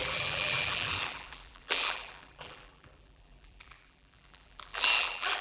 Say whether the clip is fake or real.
fake